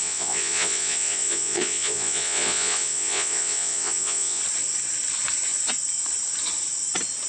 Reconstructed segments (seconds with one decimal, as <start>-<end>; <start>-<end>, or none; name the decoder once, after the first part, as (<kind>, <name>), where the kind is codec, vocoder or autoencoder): 0.0-4.4 (vocoder, Vocos)